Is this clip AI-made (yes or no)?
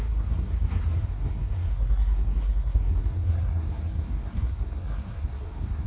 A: yes